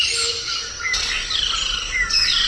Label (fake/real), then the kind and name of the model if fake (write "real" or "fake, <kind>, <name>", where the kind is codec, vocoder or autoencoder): real